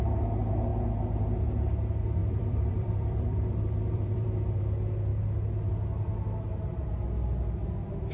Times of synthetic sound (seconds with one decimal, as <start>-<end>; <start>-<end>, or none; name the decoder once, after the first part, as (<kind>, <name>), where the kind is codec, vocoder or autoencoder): 2.2-4.6 (vocoder, BigVGAN v2)